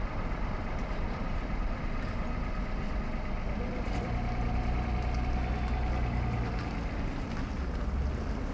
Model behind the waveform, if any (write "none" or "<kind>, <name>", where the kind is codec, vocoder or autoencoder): none